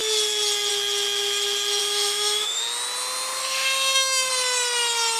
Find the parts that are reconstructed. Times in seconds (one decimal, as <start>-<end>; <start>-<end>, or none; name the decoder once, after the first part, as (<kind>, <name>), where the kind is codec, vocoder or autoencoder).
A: 1.8-2.6 (autoencoder, DAC-VAE); 3.4-4.3